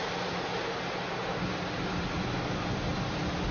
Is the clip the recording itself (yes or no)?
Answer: yes